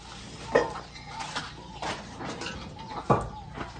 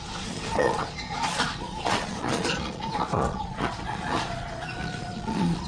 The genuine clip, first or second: first